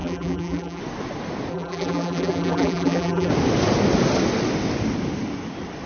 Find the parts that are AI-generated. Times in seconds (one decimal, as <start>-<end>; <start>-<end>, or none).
0.0-0.8; 1.5-3.3